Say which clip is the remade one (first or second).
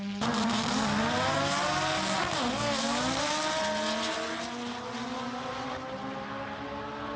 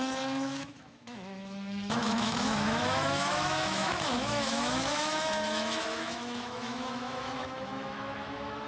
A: second